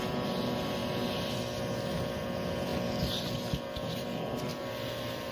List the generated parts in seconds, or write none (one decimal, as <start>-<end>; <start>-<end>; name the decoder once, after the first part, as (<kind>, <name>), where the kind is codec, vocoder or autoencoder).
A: 4.5-5.3 (vocoder, BigVGAN v2)